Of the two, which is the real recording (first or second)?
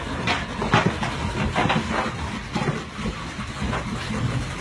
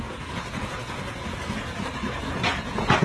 first